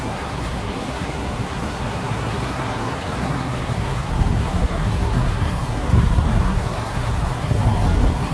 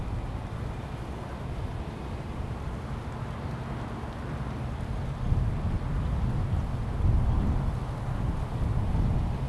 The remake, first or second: first